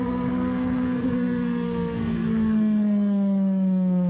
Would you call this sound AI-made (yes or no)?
yes